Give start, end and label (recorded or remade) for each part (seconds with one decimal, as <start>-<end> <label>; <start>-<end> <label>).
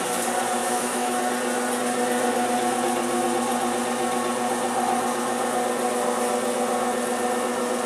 0.0-0.6 recorded; 0.6-1.2 remade; 1.2-7.9 recorded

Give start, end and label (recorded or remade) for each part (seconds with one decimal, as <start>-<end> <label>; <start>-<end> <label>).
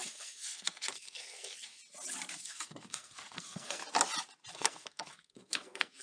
0.0-1.8 remade; 1.8-2.4 recorded; 2.4-3.8 remade; 3.8-4.5 recorded; 4.5-6.0 remade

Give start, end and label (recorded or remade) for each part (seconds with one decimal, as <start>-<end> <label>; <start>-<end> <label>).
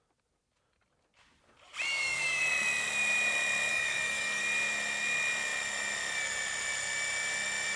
0.0-1.9 recorded; 1.9-2.4 remade; 2.4-3.7 recorded; 3.7-4.4 remade; 4.4-7.8 recorded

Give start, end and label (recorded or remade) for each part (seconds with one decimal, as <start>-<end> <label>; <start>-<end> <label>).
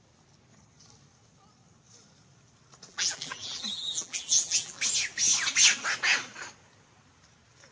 0.0-2.9 recorded; 2.9-4.8 remade; 4.8-7.7 recorded